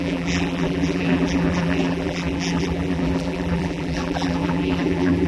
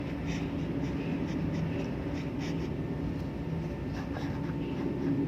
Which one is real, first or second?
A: second